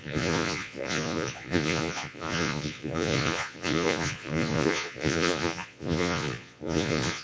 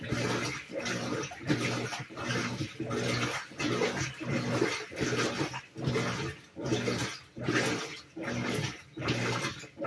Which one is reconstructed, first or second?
first